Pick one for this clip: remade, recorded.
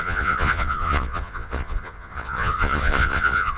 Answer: remade